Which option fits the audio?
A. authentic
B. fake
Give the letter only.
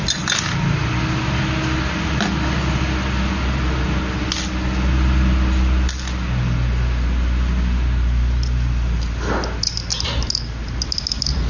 A